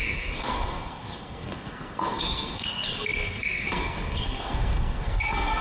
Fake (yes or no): yes